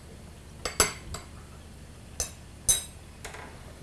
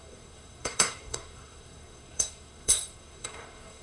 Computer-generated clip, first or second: second